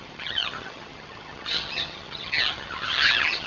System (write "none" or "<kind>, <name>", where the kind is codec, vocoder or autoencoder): vocoder, HiFi-GAN